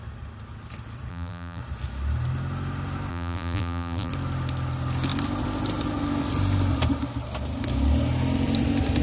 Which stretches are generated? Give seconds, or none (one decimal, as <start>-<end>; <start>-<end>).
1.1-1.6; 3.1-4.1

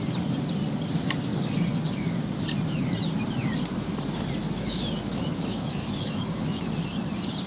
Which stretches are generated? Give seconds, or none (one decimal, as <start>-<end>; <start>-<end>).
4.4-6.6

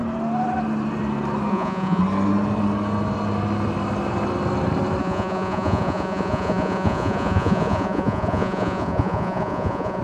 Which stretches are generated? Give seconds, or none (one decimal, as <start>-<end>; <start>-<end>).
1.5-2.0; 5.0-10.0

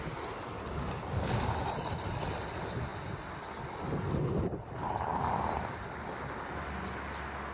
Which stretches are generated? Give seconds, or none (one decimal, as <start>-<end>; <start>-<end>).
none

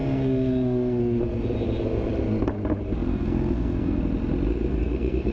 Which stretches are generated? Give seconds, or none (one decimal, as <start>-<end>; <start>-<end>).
0.0-1.0; 3.1-4.0; 4.7-5.3

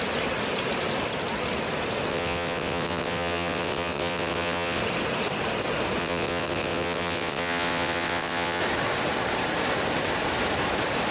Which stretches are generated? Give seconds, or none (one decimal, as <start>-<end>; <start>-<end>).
2.1-4.8; 6.0-8.6

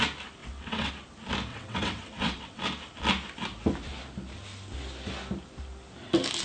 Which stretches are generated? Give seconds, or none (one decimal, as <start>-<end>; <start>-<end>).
0.4-0.9; 1.5-2.6

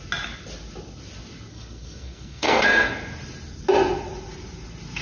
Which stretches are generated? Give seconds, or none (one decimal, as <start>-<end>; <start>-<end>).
1.5-2.9